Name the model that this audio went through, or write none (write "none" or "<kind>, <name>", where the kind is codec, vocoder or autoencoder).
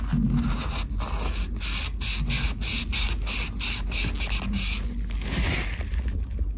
none